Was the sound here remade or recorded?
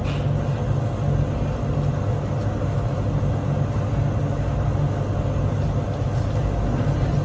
recorded